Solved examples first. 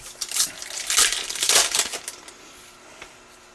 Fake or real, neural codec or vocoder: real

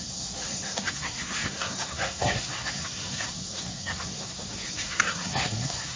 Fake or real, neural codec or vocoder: fake, codec, SNAC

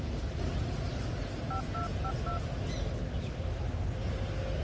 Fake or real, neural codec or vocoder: real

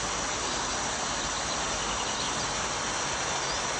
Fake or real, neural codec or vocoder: real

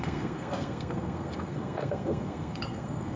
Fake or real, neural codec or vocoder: fake, codec, SNAC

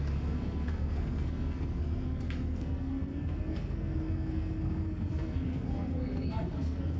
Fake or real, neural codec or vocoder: fake, codec, SNAC